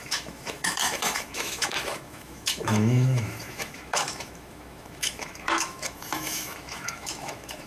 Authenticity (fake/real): fake